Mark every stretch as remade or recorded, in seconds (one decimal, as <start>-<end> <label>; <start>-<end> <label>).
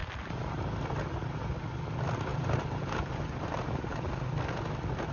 0.0-0.6 remade; 0.6-2.3 recorded; 2.3-4.4 remade; 4.4-5.1 recorded